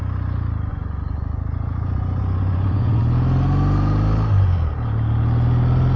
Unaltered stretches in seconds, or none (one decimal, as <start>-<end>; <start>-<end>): 0.0-0.7; 3.0-6.0